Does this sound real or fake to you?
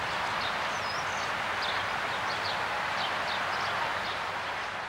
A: real